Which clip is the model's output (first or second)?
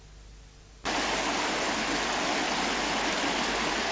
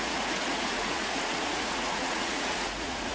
second